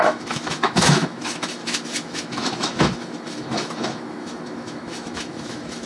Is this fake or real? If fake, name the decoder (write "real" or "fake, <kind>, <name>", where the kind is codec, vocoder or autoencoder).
fake, autoencoder, DAC-VAE